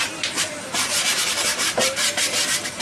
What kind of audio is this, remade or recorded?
remade